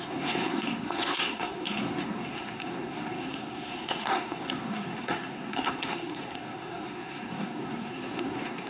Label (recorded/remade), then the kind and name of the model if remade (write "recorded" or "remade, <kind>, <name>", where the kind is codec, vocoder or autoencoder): remade, codec, SNAC